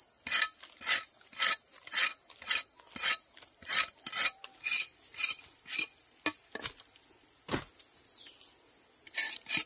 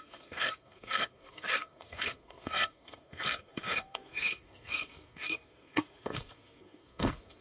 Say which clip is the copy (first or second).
second